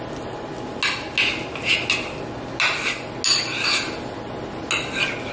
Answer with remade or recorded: recorded